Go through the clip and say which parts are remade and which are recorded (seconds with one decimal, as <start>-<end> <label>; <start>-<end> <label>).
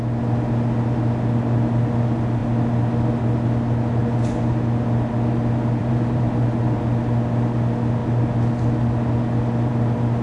0.0-5.8 recorded; 5.8-6.8 remade; 6.8-10.2 recorded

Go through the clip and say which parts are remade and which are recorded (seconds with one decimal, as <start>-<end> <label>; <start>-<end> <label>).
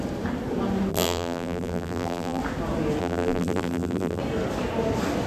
0.0-0.9 recorded; 0.9-2.4 remade; 2.4-3.0 recorded; 3.0-4.2 remade; 4.2-5.3 recorded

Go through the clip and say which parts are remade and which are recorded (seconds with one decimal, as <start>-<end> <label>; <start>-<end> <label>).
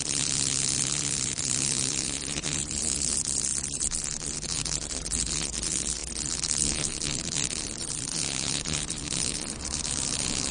0.0-10.5 recorded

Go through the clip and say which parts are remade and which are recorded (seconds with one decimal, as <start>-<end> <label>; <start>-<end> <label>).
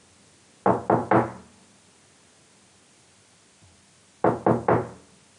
0.0-5.4 recorded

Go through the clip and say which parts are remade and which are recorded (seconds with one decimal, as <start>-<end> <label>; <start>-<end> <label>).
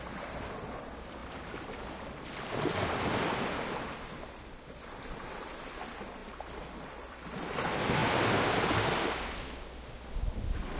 0.0-1.2 recorded; 1.2-2.3 remade; 2.3-6.2 recorded; 6.2-7.5 remade; 7.5-10.8 recorded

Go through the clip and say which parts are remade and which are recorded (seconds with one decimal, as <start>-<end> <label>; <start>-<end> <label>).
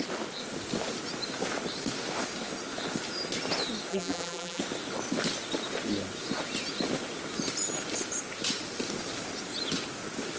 0.0-3.9 recorded; 3.9-4.6 remade; 4.6-10.4 recorded